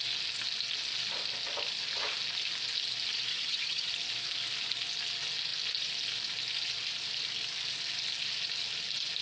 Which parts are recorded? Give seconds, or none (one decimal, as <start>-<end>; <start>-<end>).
0.0-3.3; 3.9-9.2